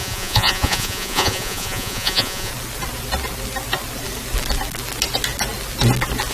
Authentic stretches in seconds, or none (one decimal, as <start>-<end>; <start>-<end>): 2.5-6.3